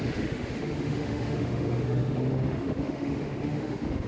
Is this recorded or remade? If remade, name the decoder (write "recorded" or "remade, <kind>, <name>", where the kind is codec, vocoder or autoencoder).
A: remade, autoencoder, DAC-VAE